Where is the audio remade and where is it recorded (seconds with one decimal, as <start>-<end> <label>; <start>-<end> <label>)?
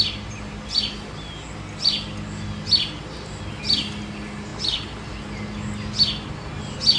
0.0-7.0 recorded